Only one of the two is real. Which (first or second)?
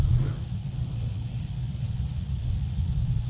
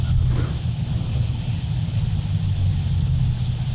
second